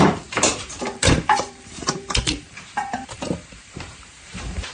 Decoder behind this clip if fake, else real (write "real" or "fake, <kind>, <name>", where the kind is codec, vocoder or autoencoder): fake, vocoder, BigVGAN v2